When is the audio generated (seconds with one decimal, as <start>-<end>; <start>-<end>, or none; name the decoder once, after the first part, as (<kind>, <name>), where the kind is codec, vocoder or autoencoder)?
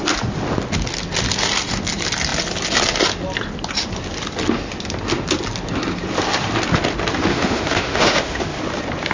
7.3-8.6 (autoencoder, DAC-VAE)